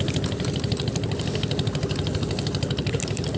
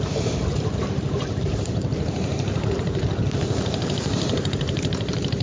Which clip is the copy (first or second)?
second